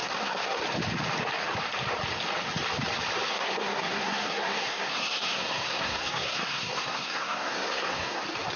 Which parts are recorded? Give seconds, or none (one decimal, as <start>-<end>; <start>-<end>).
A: 0.6-3.3; 8.2-8.6